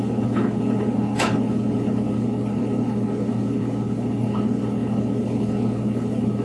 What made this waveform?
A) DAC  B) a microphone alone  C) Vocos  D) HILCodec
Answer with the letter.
D